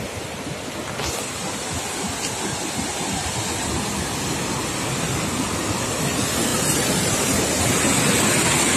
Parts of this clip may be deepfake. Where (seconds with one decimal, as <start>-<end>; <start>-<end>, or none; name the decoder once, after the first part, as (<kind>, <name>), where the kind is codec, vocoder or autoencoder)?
6.5-7.4 (vocoder, BigVGAN v2)